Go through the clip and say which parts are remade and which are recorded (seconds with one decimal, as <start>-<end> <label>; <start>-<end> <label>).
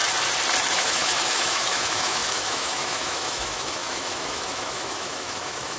0.0-0.7 recorded; 0.7-5.8 remade